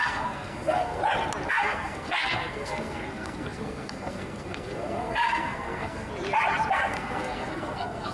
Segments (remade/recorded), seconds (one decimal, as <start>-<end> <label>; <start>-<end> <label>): 0.0-1.0 remade; 1.0-1.5 recorded; 1.5-6.1 remade; 6.1-6.7 recorded; 6.7-8.1 remade